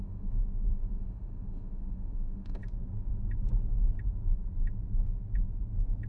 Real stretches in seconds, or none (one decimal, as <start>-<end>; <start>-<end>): 0.4-0.9; 2.6-6.1